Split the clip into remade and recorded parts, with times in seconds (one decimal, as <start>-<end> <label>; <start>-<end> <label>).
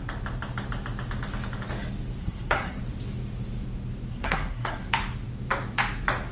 0.0-2.2 recorded; 2.2-2.8 remade; 2.8-4.1 recorded; 4.1-4.9 remade; 4.9-6.3 recorded